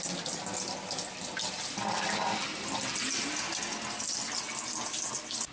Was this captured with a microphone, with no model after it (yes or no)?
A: yes